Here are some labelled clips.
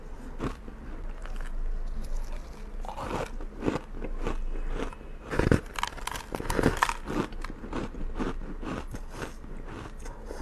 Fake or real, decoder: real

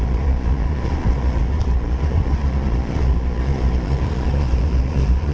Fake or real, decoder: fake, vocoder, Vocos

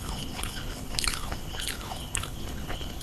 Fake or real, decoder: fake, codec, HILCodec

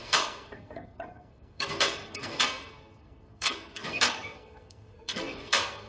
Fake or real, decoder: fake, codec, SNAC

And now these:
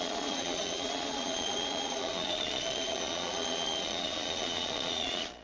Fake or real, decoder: fake, vocoder, Vocos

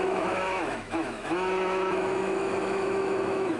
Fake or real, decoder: fake, autoencoder, DAC-VAE